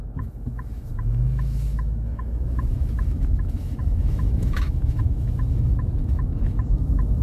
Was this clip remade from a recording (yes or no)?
yes